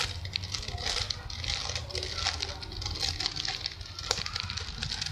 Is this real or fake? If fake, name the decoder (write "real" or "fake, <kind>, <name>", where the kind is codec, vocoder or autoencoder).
real